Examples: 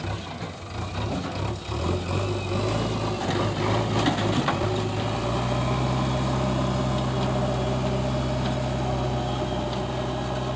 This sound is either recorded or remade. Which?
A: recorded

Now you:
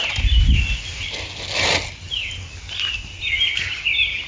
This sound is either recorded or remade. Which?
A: recorded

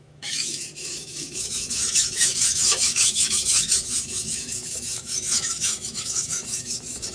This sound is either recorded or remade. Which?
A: remade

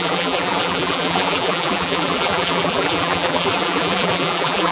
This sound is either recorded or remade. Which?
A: remade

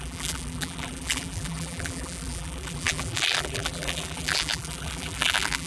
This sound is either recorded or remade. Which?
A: remade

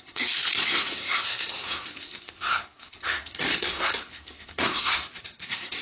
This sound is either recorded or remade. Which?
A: remade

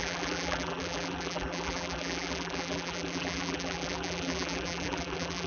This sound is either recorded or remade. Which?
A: remade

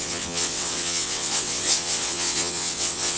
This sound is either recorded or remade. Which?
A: remade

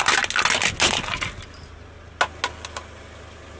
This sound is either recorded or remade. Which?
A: recorded